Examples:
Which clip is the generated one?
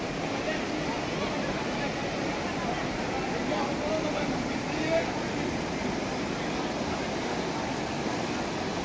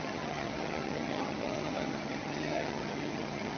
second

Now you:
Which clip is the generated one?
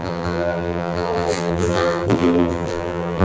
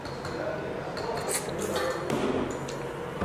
first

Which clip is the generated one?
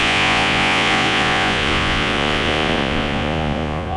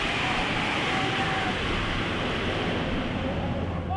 first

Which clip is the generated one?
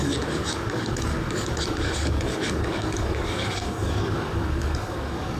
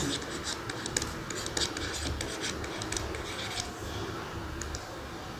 first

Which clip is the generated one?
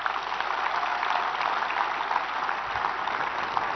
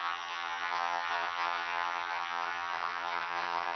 second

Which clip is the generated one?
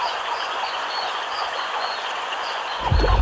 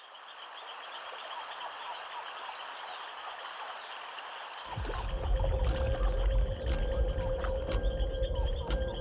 first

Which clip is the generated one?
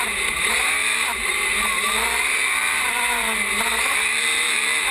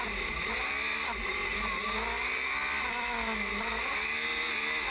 first